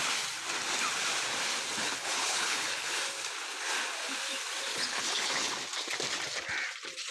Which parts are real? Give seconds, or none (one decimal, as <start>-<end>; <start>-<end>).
0.0-1.8; 3.0-4.7; 5.5-7.1